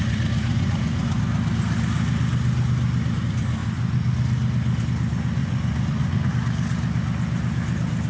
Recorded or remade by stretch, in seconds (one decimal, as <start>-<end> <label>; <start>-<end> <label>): 0.0-0.5 recorded; 0.5-1.2 remade; 1.2-5.4 recorded; 5.4-6.3 remade; 6.3-8.1 recorded